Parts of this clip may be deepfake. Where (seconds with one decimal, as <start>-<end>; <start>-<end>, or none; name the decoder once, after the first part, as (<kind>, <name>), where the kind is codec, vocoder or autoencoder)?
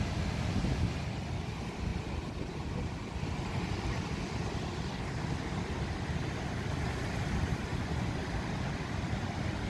7.7-8.2 (vocoder, Vocos)